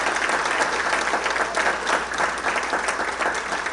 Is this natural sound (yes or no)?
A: yes